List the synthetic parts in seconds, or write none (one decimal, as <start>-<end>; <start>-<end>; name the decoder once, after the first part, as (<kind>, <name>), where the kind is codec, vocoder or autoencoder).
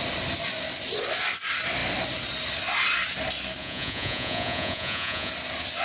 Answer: 3.6-5.3 (vocoder, Vocos)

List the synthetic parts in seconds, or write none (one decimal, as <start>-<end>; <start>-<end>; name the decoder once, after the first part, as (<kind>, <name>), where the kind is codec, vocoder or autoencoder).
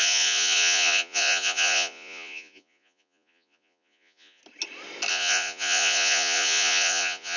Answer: 0.0-4.4 (vocoder, Vocos); 5.1-7.4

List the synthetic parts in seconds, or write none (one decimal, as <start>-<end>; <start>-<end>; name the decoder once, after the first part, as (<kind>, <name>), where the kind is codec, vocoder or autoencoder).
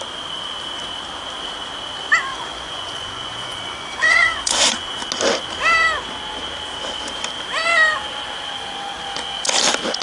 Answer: 2.3-5.0 (vocoder, Vocos)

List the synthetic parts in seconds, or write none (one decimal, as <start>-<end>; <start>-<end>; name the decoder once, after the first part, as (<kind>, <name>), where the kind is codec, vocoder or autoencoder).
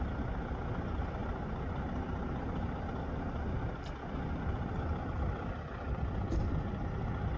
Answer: none